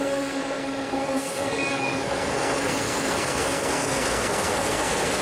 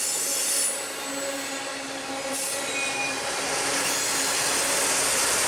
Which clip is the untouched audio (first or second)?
second